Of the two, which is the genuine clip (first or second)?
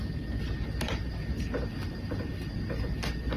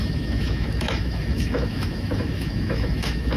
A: first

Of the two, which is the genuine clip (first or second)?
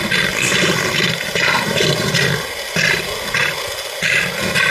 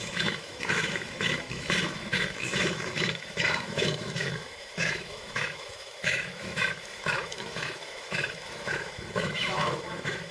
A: first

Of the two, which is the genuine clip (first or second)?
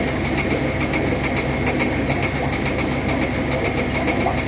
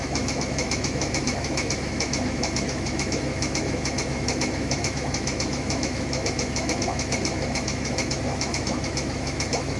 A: first